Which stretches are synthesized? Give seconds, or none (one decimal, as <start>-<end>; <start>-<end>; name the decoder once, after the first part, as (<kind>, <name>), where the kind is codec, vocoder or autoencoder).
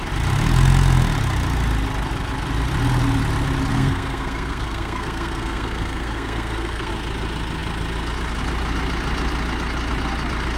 3.7-6.9 (codec, SNAC)